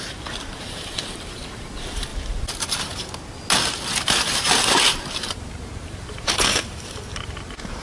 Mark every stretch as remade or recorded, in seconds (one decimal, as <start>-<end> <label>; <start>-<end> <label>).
0.0-2.1 remade; 2.1-4.1 recorded; 4.1-7.8 remade